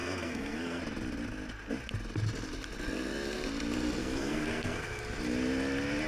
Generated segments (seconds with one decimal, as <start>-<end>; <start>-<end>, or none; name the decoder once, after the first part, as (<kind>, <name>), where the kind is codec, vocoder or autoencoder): 0.0-0.8 (codec, SNAC); 4.0-5.0